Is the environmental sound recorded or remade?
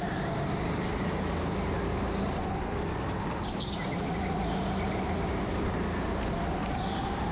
recorded